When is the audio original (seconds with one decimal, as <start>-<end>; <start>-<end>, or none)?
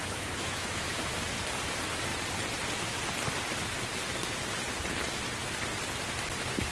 0.9-6.7